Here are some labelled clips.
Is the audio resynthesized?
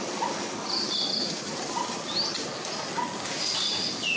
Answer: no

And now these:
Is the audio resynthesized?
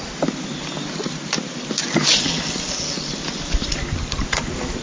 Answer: no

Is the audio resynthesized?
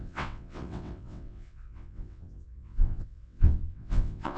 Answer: yes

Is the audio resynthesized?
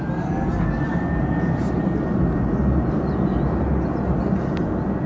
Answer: no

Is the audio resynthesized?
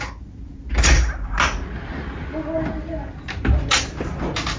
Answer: no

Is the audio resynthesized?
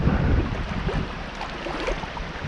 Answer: no